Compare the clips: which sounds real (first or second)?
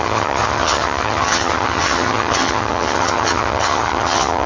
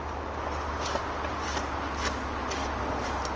second